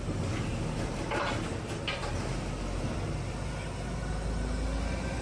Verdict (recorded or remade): recorded